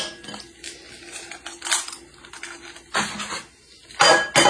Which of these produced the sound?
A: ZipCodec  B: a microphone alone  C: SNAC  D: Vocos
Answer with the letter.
B